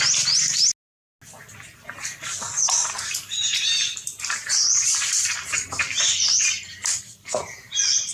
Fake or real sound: real